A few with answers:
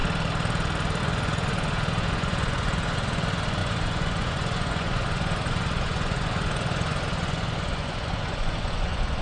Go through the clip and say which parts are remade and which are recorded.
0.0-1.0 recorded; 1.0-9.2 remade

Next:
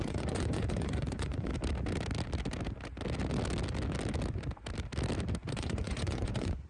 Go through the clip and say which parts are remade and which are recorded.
0.0-1.5 remade; 1.5-5.5 recorded; 5.5-6.7 remade